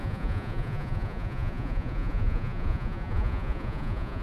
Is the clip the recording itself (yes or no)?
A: no